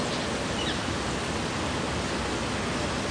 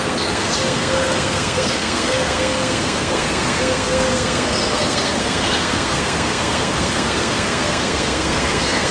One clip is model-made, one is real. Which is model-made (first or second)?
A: second